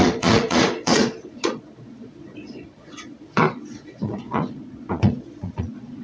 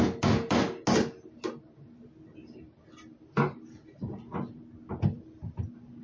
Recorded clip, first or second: second